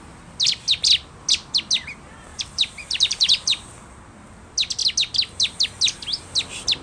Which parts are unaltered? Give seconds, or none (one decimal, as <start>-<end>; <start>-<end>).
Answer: 0.0-2.3; 3.7-6.8